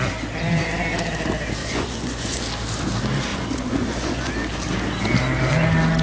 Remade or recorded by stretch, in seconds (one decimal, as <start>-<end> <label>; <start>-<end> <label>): 0.0-1.6 recorded; 1.6-2.4 remade; 2.4-3.3 recorded; 3.3-4.3 remade; 4.3-6.0 recorded